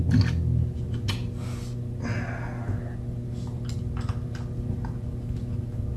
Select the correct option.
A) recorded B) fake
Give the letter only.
A